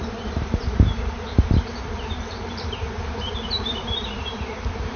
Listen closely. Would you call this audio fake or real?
fake